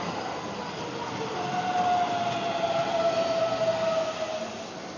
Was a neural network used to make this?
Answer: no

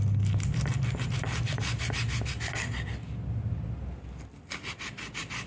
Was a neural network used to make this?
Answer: no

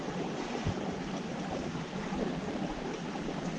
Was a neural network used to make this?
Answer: yes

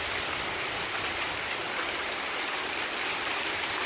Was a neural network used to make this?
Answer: yes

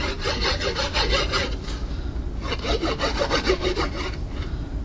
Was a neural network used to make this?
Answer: no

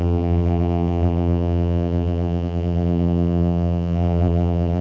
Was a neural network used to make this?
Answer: yes